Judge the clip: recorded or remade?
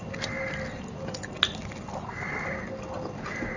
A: recorded